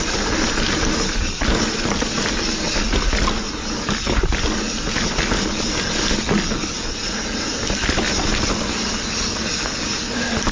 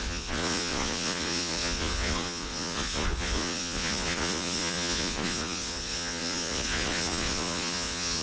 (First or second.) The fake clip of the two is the second